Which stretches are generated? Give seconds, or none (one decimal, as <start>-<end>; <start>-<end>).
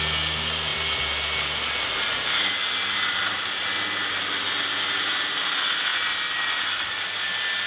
5.9-7.7